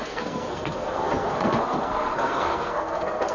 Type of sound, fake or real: fake